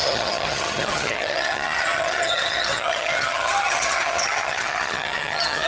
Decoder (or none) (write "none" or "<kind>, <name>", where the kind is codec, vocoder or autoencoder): vocoder, HiFi-GAN